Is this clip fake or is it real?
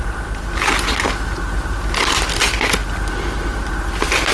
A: real